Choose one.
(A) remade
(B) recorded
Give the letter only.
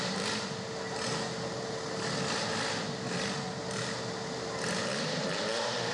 B